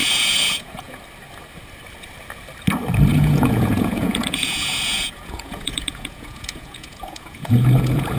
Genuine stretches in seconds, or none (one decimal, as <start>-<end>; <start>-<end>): 1.0-3.1